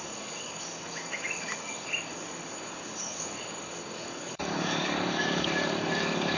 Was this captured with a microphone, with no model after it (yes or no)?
no